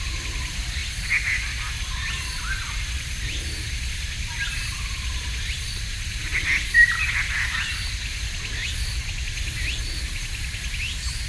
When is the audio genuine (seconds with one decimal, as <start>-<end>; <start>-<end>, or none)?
0.0-11.3